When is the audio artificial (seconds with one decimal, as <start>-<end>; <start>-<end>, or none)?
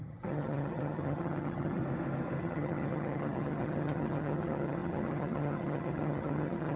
0.0-1.8; 2.4-6.8